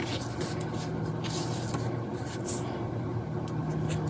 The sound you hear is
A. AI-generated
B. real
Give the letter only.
B